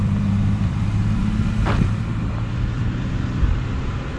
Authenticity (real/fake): fake